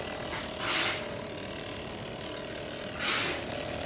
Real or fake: fake